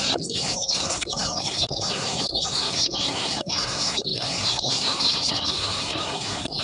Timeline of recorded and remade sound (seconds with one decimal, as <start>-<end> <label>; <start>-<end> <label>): 0.0-6.6 remade